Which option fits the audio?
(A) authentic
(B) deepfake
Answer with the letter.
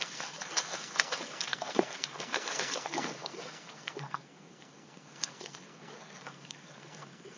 B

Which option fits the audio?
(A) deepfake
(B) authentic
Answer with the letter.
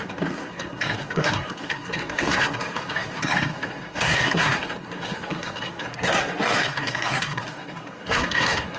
A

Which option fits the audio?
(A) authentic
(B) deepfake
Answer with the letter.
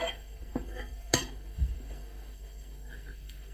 B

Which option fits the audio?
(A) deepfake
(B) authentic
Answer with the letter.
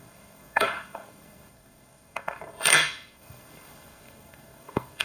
A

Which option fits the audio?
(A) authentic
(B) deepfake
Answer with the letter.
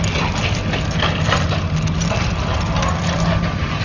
A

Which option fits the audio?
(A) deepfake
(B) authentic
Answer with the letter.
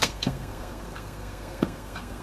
A